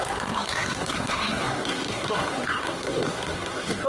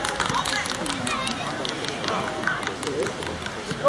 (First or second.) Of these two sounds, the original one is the second